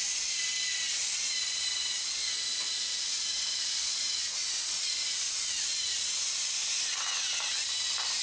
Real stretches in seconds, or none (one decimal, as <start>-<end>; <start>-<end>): 0.0-0.7; 5.4-8.2

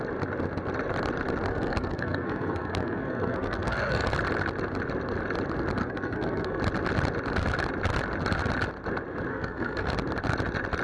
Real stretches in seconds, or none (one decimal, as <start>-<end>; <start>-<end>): 0.0-1.5; 4.1-5.8; 6.6-9.3; 9.9-10.8

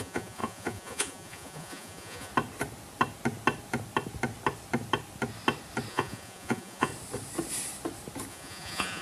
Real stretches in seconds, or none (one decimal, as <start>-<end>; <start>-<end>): 2.3-5.9; 6.9-8.3

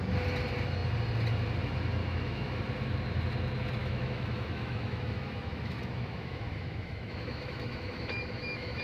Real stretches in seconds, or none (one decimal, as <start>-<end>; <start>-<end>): 0.0-2.0; 2.6-3.8

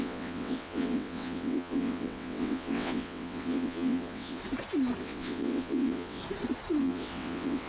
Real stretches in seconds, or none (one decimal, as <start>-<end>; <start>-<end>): 4.4-5.0; 6.2-6.8